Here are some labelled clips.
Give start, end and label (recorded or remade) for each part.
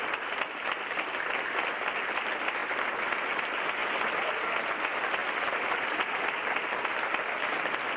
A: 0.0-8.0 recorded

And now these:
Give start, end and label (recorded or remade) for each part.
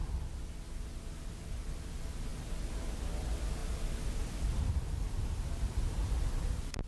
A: 0.0-6.9 recorded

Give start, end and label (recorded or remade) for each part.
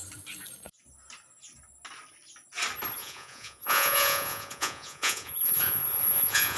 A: 0.0-3.0 recorded; 3.0-6.6 remade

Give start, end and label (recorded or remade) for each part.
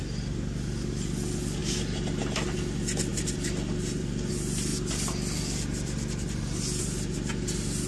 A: 0.0-1.6 recorded; 1.6-2.2 remade; 2.2-3.1 recorded; 3.1-4.3 remade; 4.3-4.7 recorded; 4.7-6.8 remade; 6.8-7.9 recorded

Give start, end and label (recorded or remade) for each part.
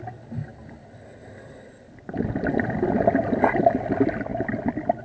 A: 0.0-0.5 recorded; 0.5-3.5 remade; 3.5-5.0 recorded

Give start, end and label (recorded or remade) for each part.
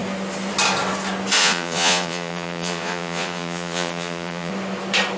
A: 0.0-1.4 recorded; 1.4-4.5 remade; 4.5-5.2 recorded